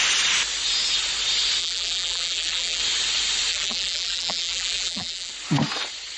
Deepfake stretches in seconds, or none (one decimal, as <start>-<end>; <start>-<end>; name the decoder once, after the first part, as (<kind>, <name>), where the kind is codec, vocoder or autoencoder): 1.6-2.8 (vocoder, BigVGAN v2); 3.5-5.3